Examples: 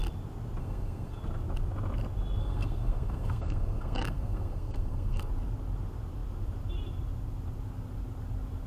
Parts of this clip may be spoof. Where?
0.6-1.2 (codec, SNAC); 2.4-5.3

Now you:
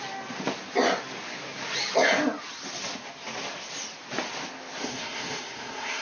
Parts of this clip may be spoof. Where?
4.8-6.0 (codec, SNAC)